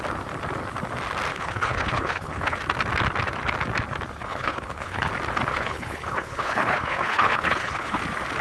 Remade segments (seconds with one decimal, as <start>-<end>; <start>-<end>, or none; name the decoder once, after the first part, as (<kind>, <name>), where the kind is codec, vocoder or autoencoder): 1.3-2.6 (codec, HILCodec); 4.2-5.1; 5.5-8.0